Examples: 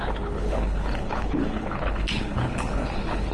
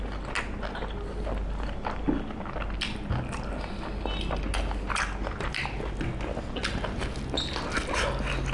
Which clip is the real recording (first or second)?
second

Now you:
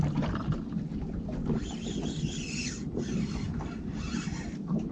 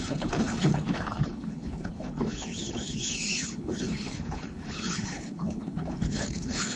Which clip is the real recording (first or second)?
first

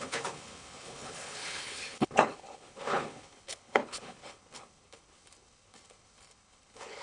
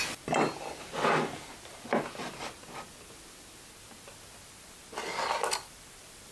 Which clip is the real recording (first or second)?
second